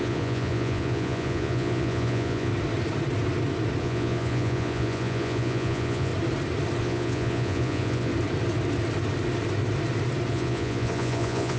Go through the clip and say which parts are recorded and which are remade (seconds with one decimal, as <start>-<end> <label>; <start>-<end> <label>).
0.0-2.5 remade; 2.5-3.8 recorded; 3.8-6.1 remade; 6.1-6.8 recorded; 6.8-8.1 remade; 8.1-10.3 recorded; 10.3-11.6 remade